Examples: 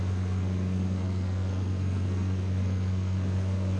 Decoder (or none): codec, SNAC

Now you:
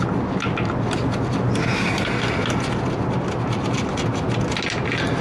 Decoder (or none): none